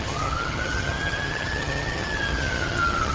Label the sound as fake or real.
fake